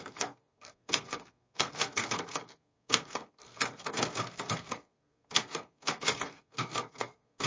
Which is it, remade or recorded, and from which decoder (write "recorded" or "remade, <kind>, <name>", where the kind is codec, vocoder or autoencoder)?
remade, codec, SNAC